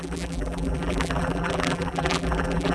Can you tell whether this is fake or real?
fake